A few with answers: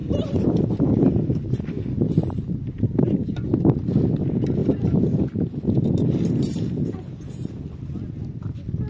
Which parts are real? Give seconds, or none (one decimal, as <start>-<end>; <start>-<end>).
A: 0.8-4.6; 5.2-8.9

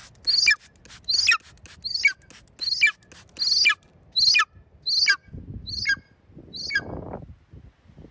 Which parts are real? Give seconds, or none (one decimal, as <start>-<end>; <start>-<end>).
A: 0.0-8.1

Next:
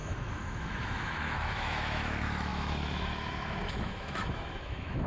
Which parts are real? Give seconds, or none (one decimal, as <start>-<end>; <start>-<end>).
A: none